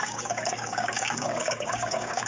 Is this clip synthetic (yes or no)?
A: yes